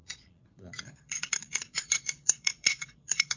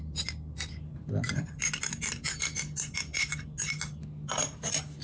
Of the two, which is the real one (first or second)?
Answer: second